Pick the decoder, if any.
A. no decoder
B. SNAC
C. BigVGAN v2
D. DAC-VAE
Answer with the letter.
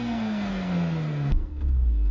B